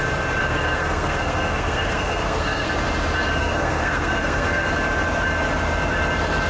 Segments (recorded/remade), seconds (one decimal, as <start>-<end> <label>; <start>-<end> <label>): 0.0-0.4 recorded; 0.4-2.7 remade; 2.7-3.4 recorded; 3.4-4.7 remade; 4.7-6.5 recorded